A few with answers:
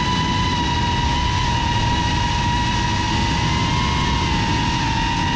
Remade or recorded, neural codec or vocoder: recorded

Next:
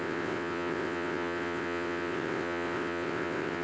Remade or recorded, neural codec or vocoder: remade, vocoder, WaveNeXt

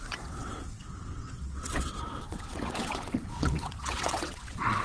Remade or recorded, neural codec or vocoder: remade, vocoder, WaveNeXt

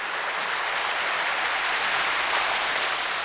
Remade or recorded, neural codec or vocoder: recorded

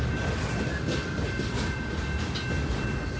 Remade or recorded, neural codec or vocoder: recorded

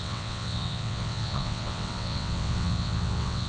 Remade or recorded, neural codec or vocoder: remade, vocoder, WaveNeXt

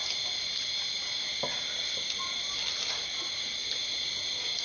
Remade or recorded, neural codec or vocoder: recorded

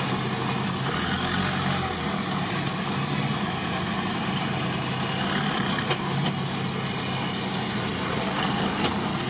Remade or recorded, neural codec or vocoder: recorded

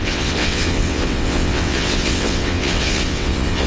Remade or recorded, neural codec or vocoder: remade, vocoder, WaveNeXt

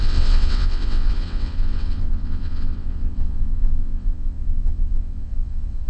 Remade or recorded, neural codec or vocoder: remade, vocoder, WaveNeXt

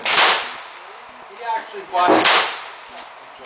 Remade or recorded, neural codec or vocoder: recorded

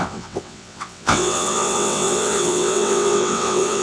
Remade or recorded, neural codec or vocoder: remade, vocoder, WaveNeXt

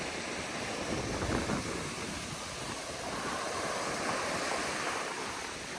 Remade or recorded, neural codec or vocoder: recorded